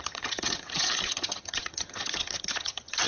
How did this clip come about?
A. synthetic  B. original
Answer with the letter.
A